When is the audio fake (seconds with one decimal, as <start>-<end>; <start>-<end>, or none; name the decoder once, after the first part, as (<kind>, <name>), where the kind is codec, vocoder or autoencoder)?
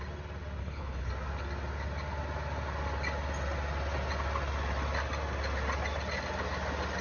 0.6-1.1 (codec, HILCodec)